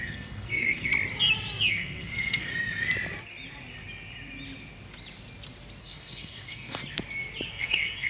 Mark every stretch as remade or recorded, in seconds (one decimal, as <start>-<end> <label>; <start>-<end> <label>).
0.0-0.9 remade; 0.9-1.7 recorded; 1.7-2.5 remade; 2.5-5.8 recorded; 5.8-6.8 remade; 6.8-7.5 recorded; 7.5-8.1 remade